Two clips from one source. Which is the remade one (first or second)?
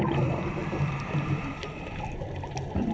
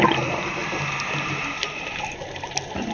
first